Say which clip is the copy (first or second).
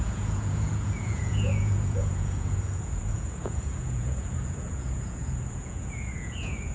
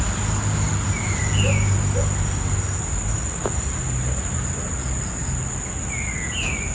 first